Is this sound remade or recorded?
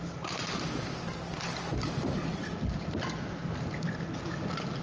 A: recorded